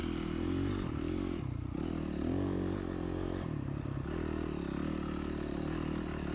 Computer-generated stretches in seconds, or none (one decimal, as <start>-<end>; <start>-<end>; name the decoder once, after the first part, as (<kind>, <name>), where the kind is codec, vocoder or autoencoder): none